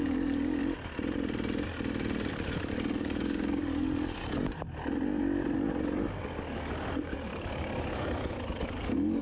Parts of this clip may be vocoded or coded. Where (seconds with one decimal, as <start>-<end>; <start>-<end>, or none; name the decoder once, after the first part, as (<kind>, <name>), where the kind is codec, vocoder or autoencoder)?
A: 0.0-0.6 (codec, DAC); 2.3-4.2; 6.2-9.2